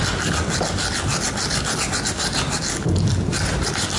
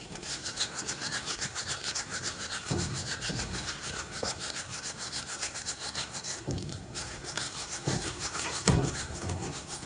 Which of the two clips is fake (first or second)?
second